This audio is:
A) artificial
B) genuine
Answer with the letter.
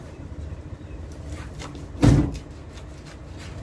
B